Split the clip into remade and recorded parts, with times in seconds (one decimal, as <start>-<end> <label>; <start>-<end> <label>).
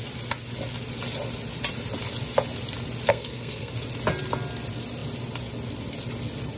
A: 0.0-3.1 recorded; 3.1-3.7 remade; 3.7-6.6 recorded